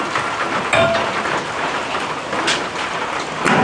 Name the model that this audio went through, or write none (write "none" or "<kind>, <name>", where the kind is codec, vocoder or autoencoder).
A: none